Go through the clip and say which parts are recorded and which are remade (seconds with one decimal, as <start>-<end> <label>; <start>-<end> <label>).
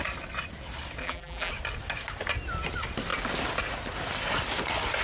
0.0-1.0 recorded; 1.0-1.5 remade; 1.5-5.0 recorded